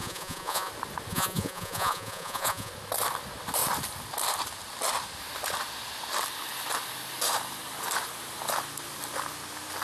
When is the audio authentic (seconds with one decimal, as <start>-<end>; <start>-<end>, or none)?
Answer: 0.7-1.1; 2.7-9.8